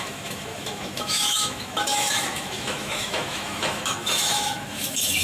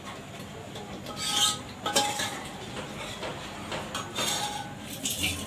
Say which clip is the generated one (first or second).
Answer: first